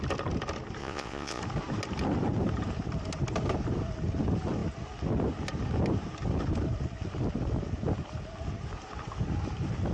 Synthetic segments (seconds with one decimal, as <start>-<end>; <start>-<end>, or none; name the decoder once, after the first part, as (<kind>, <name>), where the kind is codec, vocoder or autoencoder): 0.8-1.4 (vocoder, Vocos)